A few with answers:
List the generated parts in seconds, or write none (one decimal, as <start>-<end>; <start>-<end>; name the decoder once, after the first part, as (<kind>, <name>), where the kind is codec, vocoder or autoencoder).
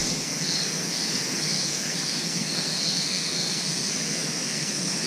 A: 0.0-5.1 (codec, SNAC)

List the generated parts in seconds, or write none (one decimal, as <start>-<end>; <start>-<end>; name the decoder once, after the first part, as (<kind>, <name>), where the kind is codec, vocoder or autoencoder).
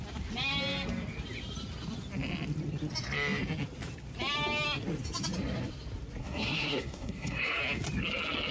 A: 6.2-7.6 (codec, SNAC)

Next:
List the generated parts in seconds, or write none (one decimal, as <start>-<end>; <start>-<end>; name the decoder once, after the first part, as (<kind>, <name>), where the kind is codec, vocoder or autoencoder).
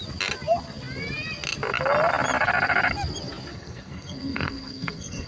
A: 3.5-5.3 (codec, SNAC)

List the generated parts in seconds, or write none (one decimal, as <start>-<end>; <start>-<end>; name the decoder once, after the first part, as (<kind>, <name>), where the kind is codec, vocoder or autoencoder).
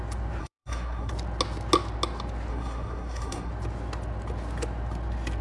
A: 0.4-1.1 (codec, SNAC); 2.5-3.5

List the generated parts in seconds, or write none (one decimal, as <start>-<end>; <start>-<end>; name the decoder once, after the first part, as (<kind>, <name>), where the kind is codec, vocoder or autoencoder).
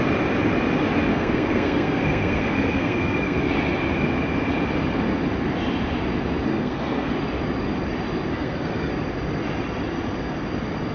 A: 1.1-3.5 (codec, SNAC); 6.5-7.1; 8.3-8.9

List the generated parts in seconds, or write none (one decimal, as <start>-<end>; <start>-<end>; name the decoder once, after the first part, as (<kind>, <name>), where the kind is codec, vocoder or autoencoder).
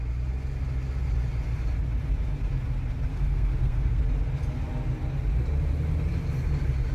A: 3.1-4.0 (codec, SNAC)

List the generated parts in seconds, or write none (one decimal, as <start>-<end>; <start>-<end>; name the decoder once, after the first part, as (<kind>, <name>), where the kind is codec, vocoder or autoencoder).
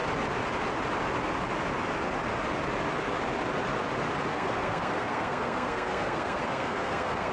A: 4.3-7.3 (codec, SNAC)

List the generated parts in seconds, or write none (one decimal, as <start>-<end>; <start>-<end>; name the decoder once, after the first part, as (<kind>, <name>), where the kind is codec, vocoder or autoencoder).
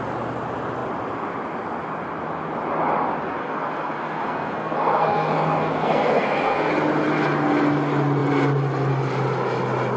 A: 3.4-6.7 (codec, SNAC)